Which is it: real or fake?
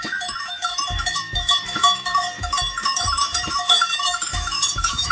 fake